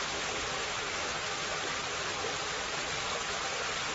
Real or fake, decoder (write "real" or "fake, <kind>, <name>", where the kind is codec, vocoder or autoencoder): real